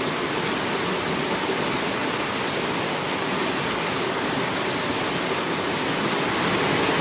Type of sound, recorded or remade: recorded